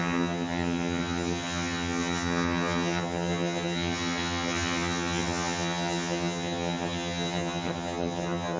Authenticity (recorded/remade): remade